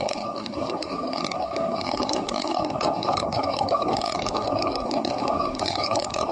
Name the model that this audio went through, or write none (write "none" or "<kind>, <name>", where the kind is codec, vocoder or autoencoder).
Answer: codec, SNAC